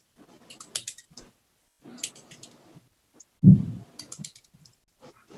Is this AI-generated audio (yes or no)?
no